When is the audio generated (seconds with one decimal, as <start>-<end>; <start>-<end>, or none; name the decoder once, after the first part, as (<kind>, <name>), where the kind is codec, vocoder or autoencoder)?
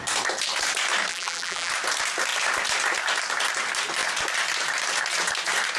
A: 1.1-1.7 (vocoder, BigVGAN v2)